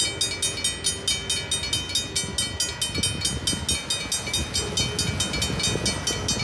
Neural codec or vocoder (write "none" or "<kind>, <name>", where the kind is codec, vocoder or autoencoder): none